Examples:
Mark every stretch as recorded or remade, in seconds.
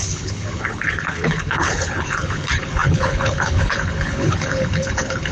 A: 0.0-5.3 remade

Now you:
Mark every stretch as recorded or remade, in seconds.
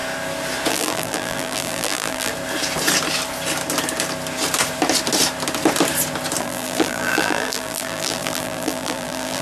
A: 0.0-0.7 recorded; 0.7-2.3 remade; 2.3-6.4 recorded; 6.4-9.4 remade